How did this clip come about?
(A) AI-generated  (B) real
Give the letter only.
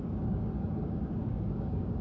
A